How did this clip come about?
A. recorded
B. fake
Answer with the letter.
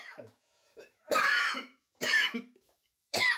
B